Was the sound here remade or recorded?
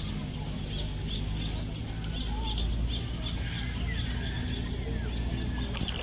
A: recorded